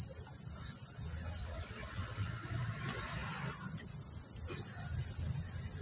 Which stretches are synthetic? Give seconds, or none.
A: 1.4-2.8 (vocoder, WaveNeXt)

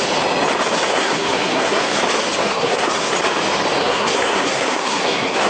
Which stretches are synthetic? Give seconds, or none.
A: 0.9-2.0 (codec, SNAC); 2.4-3.1; 3.8-5.5

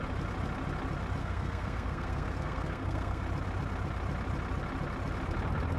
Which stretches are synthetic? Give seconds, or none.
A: 1.2-3.2 (codec, SNAC)

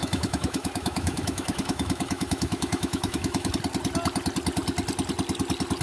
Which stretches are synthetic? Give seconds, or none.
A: 0.0-3.5 (autoencoder, DAC-VAE)

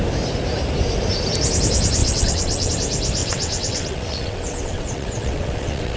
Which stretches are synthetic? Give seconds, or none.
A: 2.0-2.7 (vocoder, WaveNeXt); 3.2-6.0